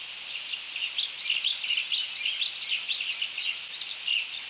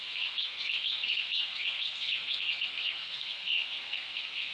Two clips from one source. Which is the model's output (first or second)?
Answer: second